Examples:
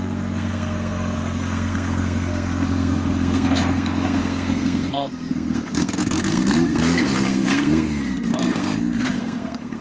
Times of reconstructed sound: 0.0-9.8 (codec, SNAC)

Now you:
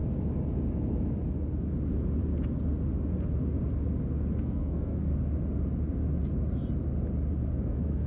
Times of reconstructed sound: 4.4-5.1 (codec, SNAC); 7.6-8.1

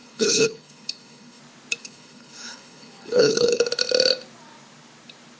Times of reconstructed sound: 0.0-1.4 (codec, HILCodec); 1.8-3.6

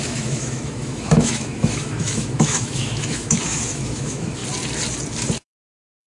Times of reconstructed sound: 0.0-4.4 (autoencoder, DAC-VAE); 5.4-6.1

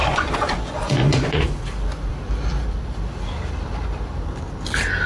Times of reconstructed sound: 0.0-1.6 (vocoder, Vocos)

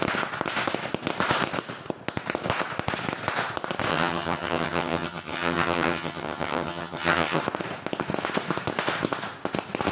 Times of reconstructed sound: 3.9-7.4 (vocoder, HiFi-GAN)

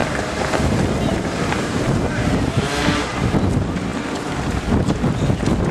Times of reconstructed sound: 1.1-3.1 (vocoder, BigVGAN v2)